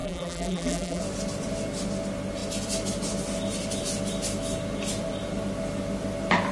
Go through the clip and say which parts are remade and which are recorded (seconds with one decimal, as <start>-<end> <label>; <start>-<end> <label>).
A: 0.0-1.0 remade; 1.0-6.5 recorded